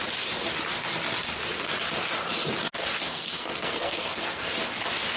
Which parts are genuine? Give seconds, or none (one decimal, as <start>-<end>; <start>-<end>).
0.0-3.0; 4.5-5.2